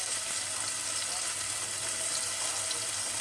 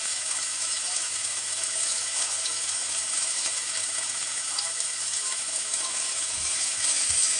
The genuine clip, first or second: first